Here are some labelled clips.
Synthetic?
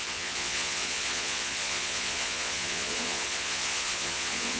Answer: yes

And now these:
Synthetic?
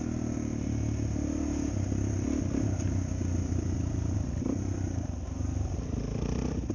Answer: no